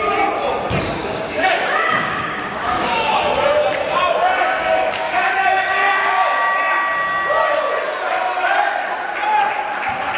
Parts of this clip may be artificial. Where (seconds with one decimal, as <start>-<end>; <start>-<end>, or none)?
1.0-3.2; 4.4-6.4